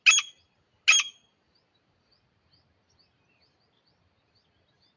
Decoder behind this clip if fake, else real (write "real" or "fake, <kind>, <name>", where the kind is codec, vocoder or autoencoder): real